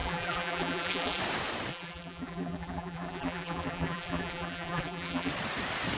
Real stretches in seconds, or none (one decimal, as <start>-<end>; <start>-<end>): 1.2-1.7; 5.3-6.0